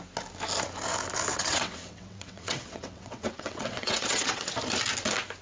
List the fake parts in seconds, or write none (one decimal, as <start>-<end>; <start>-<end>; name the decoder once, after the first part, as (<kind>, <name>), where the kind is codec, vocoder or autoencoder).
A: 1.3-4.5 (vocoder, WaveNeXt)

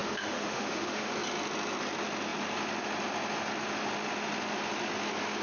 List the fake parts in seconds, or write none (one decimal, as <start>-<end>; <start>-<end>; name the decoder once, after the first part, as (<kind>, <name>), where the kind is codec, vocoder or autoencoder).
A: 0.0-1.1 (autoencoder, DAC-VAE)